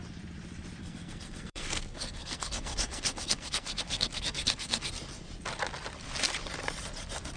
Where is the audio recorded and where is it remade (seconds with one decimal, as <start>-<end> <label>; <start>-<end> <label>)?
0.0-0.8 recorded; 0.8-4.9 remade; 4.9-7.4 recorded